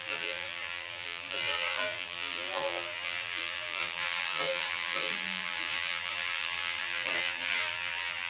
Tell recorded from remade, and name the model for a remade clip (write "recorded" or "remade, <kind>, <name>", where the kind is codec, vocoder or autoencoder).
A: remade, vocoder, BigVGAN v2